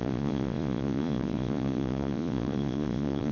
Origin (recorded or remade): remade